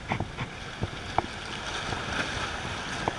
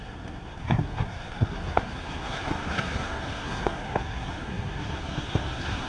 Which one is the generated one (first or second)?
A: second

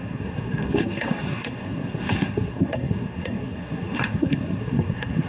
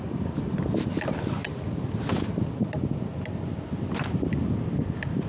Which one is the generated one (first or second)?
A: first